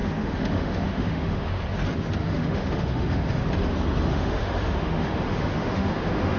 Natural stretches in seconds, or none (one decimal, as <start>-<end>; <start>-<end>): 1.6-2.2; 3.5-4.1